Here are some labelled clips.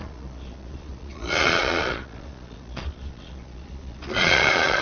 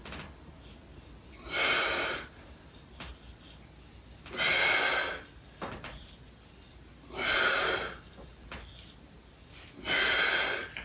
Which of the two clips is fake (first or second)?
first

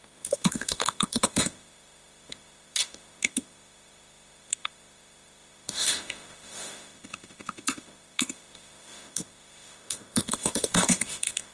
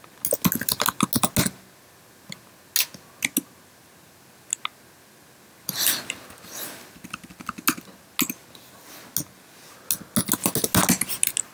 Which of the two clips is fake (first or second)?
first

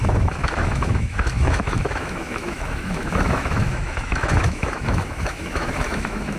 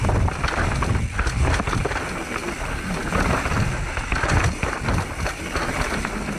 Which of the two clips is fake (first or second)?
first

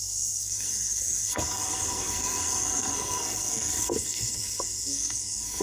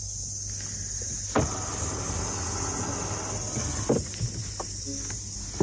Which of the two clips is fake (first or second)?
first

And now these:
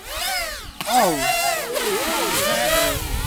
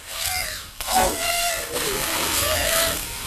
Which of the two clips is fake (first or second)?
second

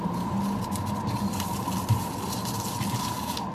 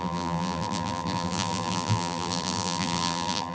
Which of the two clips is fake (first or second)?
second